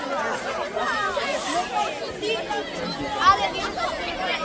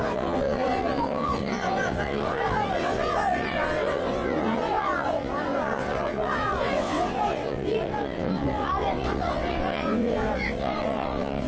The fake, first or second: second